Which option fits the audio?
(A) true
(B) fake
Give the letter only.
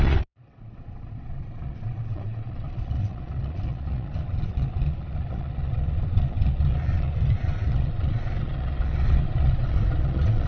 B